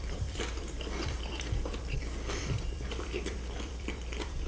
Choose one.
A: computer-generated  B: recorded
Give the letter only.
A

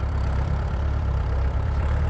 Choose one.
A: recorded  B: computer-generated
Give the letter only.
B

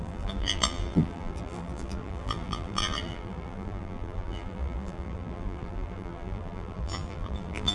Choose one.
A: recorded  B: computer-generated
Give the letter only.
B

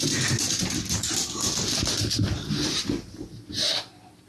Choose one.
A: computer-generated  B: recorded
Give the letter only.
B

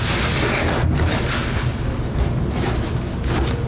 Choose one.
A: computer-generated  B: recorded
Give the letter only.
A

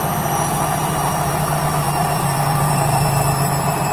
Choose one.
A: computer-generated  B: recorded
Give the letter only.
A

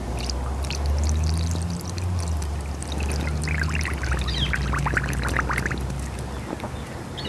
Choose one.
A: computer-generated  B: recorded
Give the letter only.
B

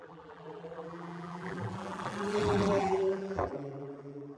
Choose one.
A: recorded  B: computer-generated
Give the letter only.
B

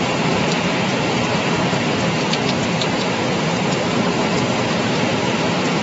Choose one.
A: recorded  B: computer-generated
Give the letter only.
B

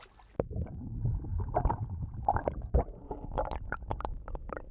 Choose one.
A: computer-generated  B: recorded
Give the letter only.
B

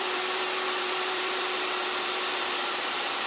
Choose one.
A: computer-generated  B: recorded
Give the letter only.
A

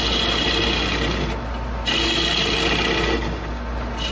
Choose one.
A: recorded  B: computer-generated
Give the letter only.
A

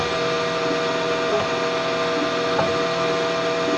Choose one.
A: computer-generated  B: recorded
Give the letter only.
B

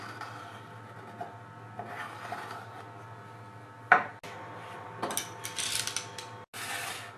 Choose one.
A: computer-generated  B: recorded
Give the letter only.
B